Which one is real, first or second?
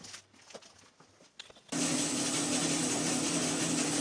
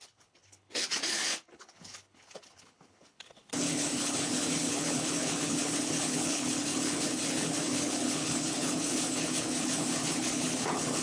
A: first